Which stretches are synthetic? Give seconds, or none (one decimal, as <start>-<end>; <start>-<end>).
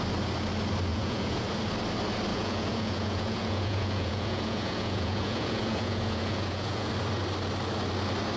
0.9-1.4; 2.3-6.9